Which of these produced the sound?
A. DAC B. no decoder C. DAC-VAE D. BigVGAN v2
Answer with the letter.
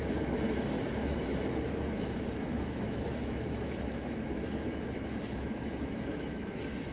C